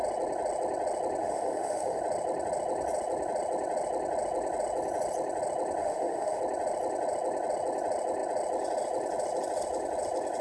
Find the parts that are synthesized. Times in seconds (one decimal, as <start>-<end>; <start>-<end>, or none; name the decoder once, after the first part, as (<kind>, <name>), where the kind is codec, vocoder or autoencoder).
1.2-2.0 (autoencoder, DAC-VAE); 5.8-6.4